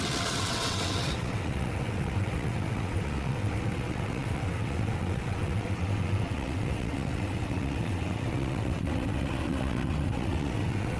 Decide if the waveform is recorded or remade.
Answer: remade